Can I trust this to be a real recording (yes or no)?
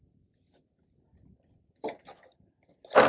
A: yes